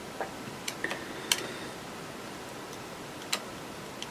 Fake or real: real